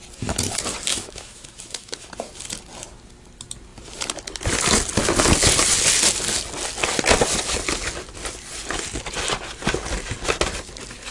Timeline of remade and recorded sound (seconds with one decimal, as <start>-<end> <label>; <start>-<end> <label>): 0.0-0.9 recorded; 0.9-2.1 remade; 2.1-11.1 recorded